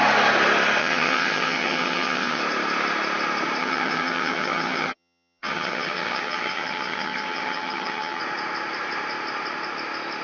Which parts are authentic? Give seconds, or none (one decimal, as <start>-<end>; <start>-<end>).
0.0-0.8; 2.4-3.6; 8.2-10.2